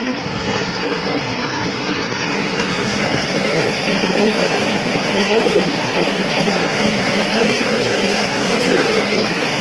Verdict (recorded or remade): remade